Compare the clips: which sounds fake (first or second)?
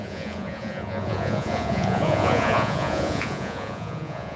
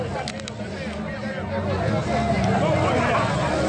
first